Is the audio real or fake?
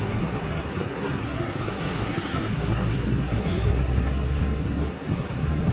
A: fake